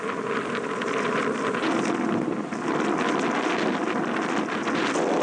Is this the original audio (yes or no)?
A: yes